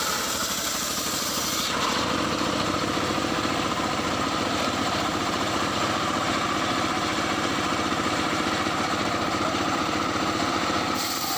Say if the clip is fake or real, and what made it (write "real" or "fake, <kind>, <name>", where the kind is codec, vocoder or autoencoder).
fake, vocoder, BigVGAN v2